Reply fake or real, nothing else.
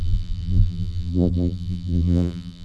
fake